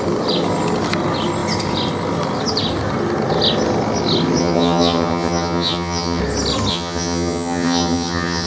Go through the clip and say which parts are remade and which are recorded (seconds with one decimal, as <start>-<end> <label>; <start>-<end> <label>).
0.0-4.4 recorded; 4.4-6.2 remade; 6.2-6.7 recorded; 6.7-8.5 remade